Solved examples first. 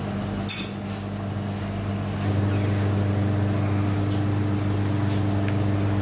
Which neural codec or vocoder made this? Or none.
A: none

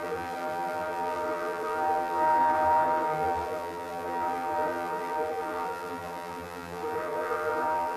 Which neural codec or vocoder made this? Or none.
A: vocoder, BigVGAN v2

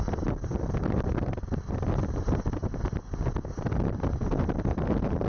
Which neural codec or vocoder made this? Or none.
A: none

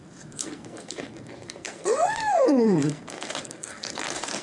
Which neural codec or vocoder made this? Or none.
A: codec, SNAC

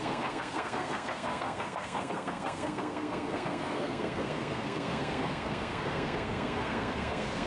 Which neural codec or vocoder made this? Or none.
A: codec, SNAC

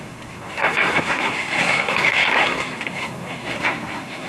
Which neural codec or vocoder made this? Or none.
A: codec, SNAC